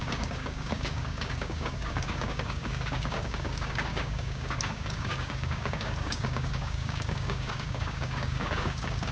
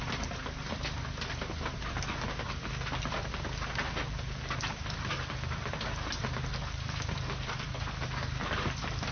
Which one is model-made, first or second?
first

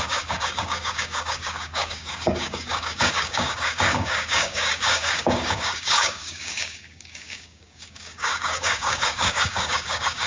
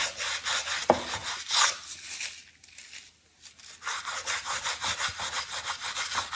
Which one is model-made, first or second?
first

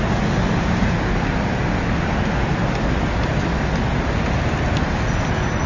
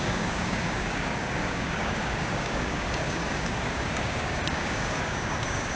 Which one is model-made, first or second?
second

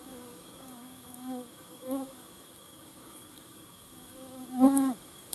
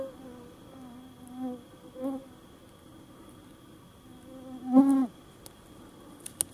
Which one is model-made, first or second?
first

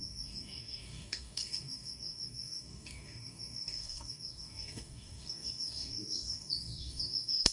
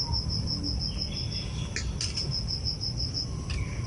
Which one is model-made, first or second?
first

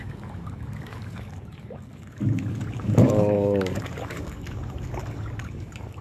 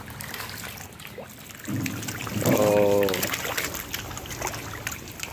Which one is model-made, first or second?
first